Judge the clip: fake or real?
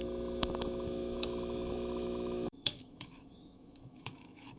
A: fake